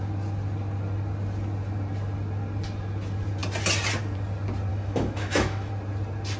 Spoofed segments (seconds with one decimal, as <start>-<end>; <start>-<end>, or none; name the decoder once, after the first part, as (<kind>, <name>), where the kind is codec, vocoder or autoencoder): 4.7-5.7 (autoencoder, DAC-VAE)